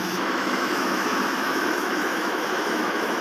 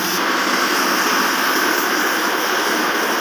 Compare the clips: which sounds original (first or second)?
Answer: second